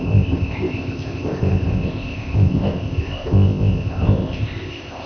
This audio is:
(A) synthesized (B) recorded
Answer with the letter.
A